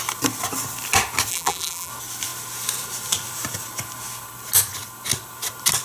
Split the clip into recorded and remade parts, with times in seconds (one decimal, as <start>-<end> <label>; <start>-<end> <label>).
0.0-1.3 recorded; 1.3-1.9 remade; 1.9-5.8 recorded